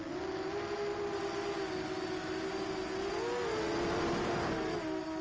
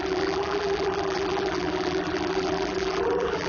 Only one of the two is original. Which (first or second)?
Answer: first